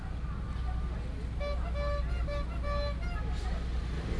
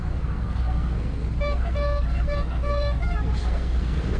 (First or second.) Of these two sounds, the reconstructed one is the second